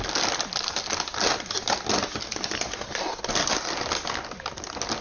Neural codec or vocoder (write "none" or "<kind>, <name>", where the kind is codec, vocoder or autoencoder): none